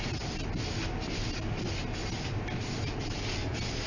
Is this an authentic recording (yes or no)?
yes